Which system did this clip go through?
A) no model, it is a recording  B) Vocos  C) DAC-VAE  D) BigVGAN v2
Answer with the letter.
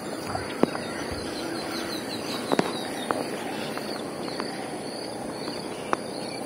A